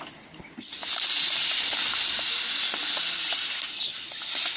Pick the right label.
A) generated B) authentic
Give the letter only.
B